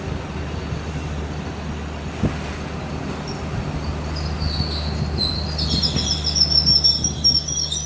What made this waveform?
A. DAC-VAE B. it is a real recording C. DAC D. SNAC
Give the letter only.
B